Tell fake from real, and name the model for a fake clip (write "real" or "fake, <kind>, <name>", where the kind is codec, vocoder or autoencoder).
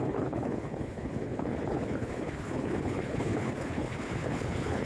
fake, codec, HILCodec